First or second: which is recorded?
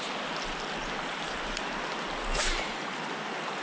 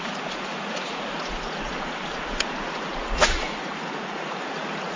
first